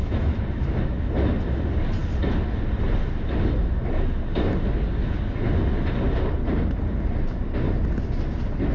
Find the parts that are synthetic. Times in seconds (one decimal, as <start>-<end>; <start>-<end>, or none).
0.0-1.1